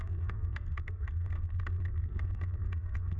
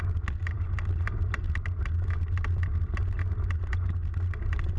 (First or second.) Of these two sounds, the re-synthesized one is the first